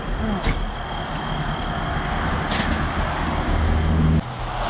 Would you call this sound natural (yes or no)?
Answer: yes